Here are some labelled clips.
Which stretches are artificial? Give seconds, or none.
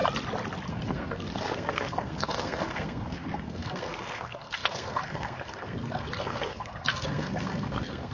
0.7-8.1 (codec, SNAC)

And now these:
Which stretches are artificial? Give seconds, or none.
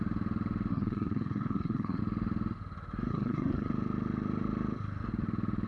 0.7-2.0 (codec, SNAC); 3.1-3.7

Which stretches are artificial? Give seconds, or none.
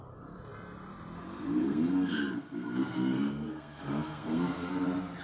1.6-4.7 (codec, SNAC)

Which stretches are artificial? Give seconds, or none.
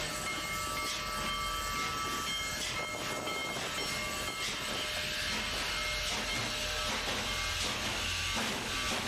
none